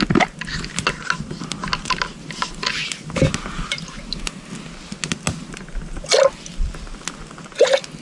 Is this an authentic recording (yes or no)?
yes